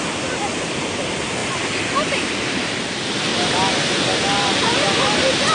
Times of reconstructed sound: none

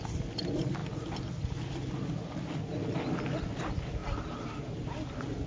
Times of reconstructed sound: none

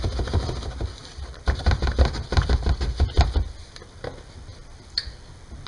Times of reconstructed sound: 1.0-3.6 (vocoder, BigVGAN v2); 4.5-5.2

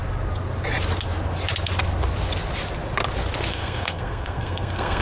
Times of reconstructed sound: 3.5-5.0 (codec, SNAC)